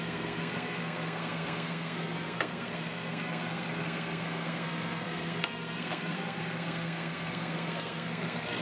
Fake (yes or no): yes